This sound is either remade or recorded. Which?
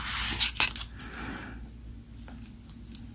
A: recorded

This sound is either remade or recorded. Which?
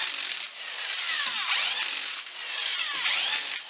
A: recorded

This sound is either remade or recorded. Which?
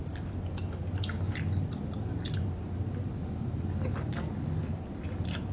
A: recorded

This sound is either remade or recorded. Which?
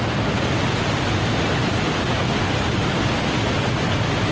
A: recorded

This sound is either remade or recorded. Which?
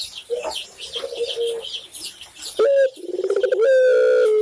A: recorded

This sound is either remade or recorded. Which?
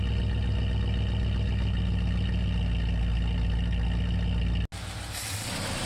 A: recorded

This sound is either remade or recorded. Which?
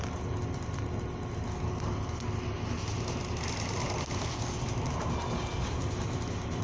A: recorded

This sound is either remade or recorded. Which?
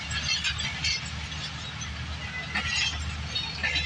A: recorded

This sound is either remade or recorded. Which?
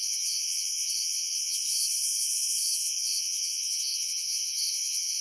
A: remade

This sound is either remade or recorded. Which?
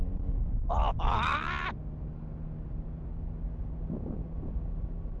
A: recorded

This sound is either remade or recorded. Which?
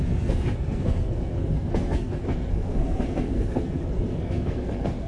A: remade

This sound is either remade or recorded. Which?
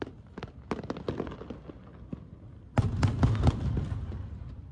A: recorded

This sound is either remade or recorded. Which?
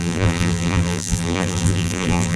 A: remade